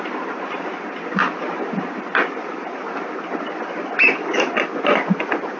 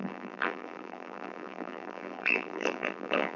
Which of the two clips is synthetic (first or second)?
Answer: second